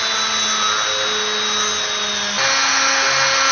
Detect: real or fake real